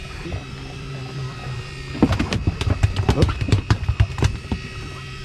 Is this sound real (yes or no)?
no